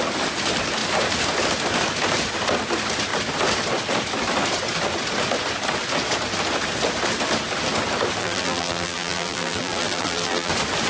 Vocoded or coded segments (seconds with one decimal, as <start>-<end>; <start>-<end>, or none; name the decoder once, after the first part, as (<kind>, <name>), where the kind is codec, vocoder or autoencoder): 8.2-10.5 (vocoder, BigVGAN v2)